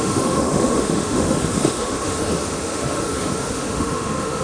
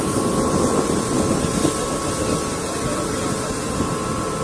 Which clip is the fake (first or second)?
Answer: first